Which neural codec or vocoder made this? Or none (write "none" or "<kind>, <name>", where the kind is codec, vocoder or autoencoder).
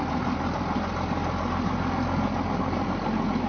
none